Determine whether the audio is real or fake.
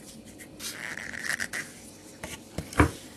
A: real